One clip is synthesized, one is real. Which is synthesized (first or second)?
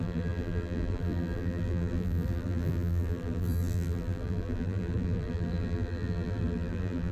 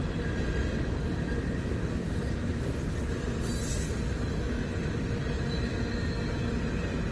first